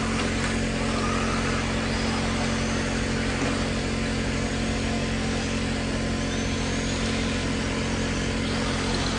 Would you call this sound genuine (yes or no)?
yes